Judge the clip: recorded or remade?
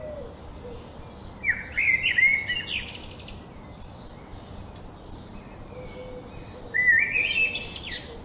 recorded